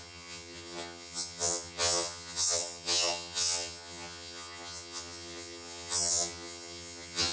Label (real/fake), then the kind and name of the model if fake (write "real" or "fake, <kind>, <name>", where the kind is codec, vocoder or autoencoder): fake, vocoder, HiFi-GAN